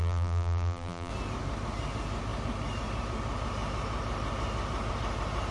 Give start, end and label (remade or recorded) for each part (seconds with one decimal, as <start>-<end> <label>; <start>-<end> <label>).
0.0-1.1 remade; 1.1-5.5 recorded